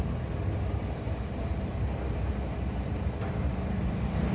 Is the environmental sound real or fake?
real